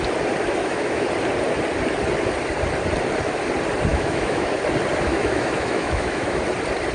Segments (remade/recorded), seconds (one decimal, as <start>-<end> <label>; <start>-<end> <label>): 0.0-0.6 recorded; 0.6-1.1 remade; 1.1-3.9 recorded; 3.9-4.5 remade; 4.5-5.1 recorded; 5.1-6.4 remade; 6.4-6.9 recorded